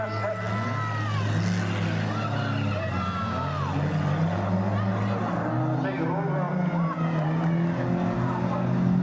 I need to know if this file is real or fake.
real